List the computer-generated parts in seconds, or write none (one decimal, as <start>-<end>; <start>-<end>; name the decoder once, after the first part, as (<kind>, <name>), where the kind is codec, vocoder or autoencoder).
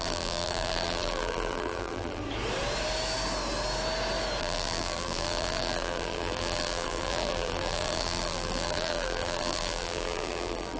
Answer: 0.0-2.2 (vocoder, BigVGAN v2); 4.4-10.8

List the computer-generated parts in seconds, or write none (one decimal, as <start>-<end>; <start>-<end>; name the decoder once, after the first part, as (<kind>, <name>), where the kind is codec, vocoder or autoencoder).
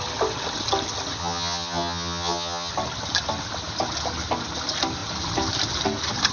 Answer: 1.2-2.7 (vocoder, HiFi-GAN)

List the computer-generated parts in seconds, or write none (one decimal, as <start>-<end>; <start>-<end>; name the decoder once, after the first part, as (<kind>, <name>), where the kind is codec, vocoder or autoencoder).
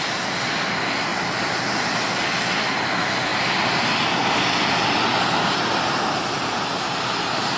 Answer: none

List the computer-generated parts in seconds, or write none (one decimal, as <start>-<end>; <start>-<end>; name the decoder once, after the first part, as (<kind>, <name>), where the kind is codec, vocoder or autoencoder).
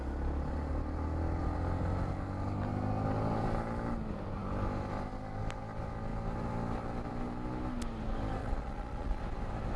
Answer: 8.4-9.2 (vocoder, Vocos)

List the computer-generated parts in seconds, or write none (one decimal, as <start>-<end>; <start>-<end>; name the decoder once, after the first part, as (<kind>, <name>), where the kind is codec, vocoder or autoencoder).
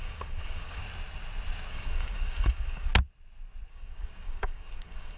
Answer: 0.0-0.8 (codec, DAC); 1.7-2.9; 3.7-5.2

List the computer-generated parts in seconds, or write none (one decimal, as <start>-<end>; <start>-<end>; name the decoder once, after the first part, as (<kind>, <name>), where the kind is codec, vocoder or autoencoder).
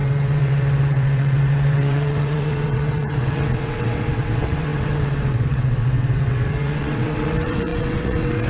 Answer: 0.0-8.5 (vocoder, WaveNeXt)